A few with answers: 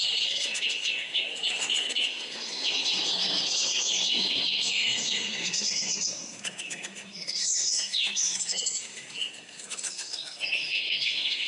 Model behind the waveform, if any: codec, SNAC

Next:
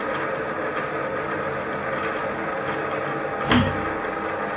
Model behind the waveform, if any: none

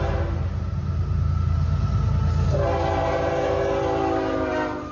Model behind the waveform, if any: none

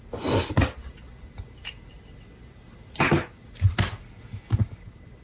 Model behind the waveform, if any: none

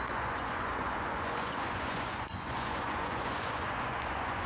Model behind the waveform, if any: vocoder, Vocos